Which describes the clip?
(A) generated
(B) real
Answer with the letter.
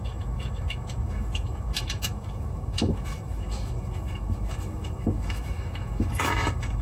A